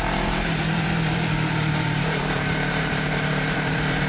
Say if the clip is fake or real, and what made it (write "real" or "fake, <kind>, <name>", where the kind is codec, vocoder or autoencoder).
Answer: fake, vocoder, BigVGAN v2